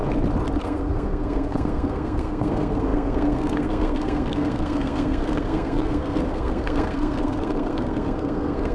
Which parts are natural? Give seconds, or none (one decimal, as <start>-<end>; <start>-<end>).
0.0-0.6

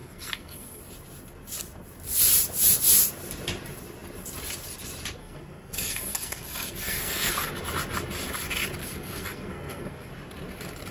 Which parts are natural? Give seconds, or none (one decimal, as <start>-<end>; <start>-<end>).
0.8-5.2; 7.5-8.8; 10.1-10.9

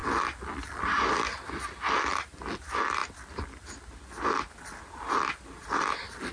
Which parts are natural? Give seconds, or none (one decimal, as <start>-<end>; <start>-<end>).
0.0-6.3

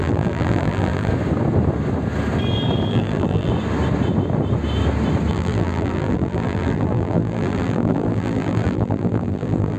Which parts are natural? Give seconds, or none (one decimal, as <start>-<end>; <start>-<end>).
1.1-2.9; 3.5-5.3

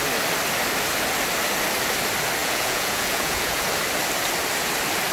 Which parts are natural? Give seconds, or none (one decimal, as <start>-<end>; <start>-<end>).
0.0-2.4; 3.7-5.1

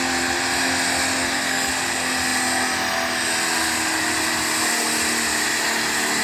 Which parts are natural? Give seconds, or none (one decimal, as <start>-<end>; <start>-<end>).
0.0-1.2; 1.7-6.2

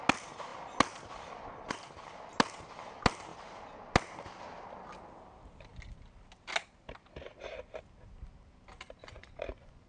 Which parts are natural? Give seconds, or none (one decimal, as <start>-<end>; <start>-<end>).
0.0-9.0